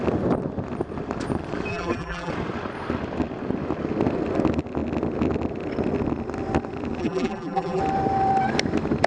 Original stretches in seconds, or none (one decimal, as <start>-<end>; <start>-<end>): 0.0-1.7; 2.3-7.0; 7.8-9.1